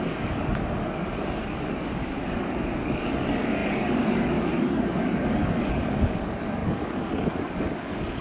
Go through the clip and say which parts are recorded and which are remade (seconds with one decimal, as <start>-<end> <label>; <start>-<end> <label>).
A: 0.0-8.2 remade